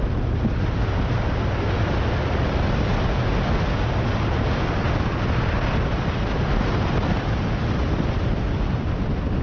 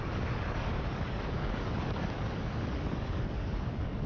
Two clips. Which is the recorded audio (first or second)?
first